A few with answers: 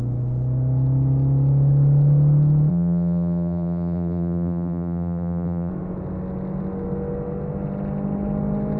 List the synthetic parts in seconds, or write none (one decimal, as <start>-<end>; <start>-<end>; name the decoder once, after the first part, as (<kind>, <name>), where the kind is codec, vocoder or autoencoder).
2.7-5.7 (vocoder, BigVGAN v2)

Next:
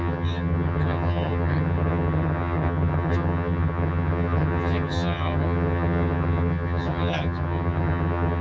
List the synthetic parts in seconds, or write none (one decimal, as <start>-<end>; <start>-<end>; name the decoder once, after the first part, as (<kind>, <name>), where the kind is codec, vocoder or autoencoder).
0.0-8.4 (vocoder, HiFi-GAN)

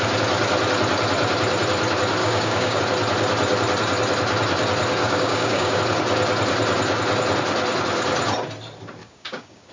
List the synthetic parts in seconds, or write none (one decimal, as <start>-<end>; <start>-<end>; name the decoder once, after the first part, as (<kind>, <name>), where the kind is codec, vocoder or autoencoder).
2.2-2.8 (codec, DAC); 5.0-5.8; 9.0-9.7

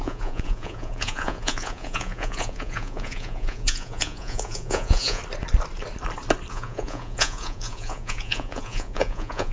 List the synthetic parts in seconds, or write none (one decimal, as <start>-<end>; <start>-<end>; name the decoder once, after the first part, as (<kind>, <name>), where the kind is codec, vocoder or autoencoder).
0.0-5.2 (vocoder, Vocos); 6.5-9.5

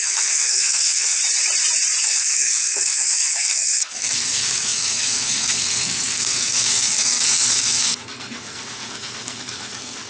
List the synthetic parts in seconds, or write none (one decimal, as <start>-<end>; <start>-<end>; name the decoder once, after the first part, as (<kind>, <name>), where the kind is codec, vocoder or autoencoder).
0.0-1.2 (codec, SNAC); 2.0-10.1

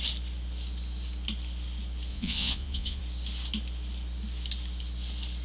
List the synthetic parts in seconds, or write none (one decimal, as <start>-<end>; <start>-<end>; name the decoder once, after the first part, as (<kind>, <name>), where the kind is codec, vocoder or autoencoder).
2.1-3.0 (vocoder, Vocos)